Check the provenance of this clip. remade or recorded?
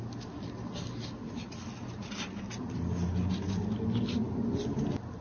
recorded